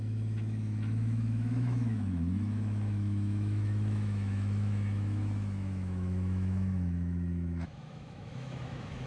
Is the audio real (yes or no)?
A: no